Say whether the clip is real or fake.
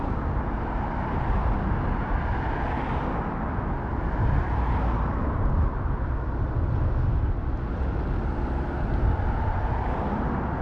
real